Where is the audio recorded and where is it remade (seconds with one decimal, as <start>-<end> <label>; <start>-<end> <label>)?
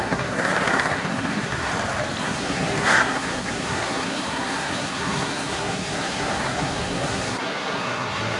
0.0-1.7 remade; 1.7-2.2 recorded; 2.2-8.4 remade